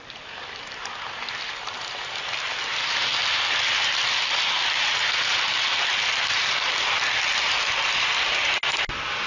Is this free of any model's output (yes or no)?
yes